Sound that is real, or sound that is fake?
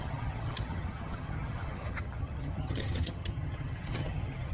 fake